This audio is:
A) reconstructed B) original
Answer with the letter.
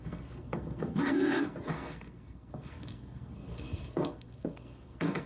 A